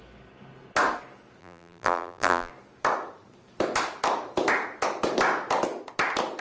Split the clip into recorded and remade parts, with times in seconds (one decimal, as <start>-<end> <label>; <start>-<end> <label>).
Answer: 0.0-1.4 recorded; 1.4-2.5 remade; 2.5-6.4 recorded